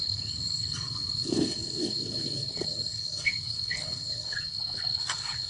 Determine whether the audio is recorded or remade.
remade